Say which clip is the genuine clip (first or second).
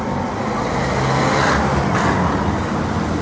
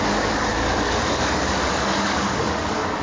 first